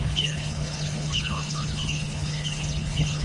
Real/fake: fake